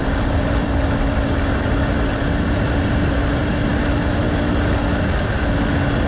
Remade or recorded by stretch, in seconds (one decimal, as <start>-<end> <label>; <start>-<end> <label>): 0.0-3.2 remade; 3.2-6.1 recorded